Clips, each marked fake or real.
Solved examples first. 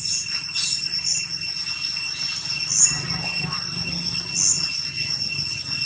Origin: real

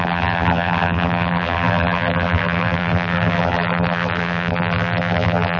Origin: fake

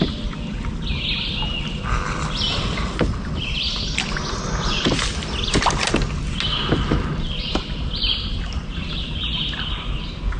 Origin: real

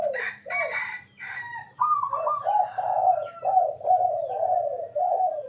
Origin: fake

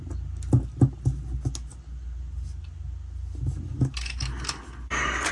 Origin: real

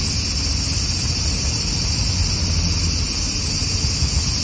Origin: real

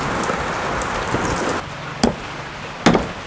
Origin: real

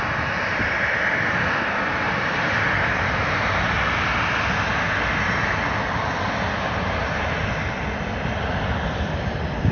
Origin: real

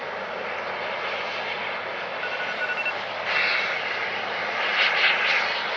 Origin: real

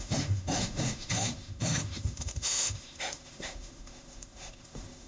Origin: fake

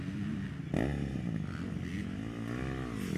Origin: real